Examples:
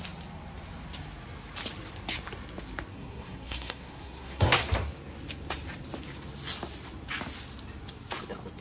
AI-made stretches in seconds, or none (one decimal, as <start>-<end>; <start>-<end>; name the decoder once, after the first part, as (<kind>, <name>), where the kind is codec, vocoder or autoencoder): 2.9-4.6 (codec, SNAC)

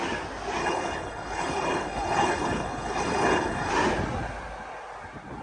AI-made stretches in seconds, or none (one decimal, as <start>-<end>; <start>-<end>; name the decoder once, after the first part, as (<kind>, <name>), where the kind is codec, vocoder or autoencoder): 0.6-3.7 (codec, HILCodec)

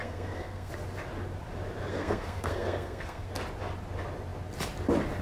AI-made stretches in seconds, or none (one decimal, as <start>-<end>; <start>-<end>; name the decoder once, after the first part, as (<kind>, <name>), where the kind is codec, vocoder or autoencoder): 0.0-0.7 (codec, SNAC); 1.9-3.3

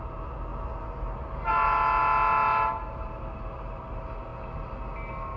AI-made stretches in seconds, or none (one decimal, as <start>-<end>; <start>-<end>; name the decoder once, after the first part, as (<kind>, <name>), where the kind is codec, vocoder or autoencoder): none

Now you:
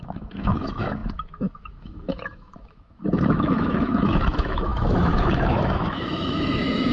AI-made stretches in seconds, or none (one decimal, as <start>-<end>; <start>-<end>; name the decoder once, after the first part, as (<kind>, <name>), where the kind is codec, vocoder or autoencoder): 0.0-6.9 (autoencoder, DAC-VAE)

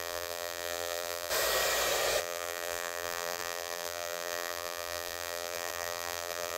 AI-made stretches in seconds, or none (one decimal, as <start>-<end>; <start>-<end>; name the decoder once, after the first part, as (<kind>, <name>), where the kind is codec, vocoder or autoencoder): 0.0-1.3 (vocoder, BigVGAN v2); 2.2-6.6

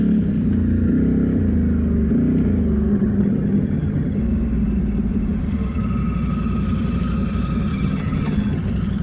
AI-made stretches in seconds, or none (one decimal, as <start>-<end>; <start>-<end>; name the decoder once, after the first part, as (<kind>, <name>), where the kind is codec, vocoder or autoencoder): 2.9-4.2 (vocoder, HiFi-GAN); 7.7-8.6